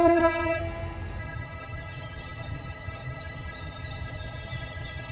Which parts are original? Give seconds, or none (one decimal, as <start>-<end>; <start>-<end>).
0.6-1.2